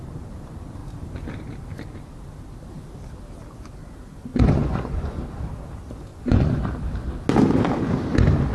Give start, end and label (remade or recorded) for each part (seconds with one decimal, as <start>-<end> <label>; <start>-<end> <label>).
0.0-4.3 recorded; 4.3-5.2 remade; 5.2-6.1 recorded; 6.1-6.6 remade; 6.6-8.5 recorded